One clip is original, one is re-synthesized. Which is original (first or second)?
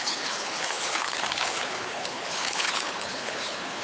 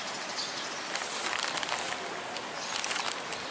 second